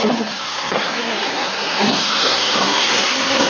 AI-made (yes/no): yes